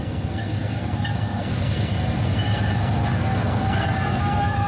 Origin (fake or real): fake